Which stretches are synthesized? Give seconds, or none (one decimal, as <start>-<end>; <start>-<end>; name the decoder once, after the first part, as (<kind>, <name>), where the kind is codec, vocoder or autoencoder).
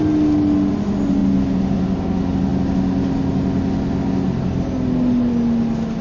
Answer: none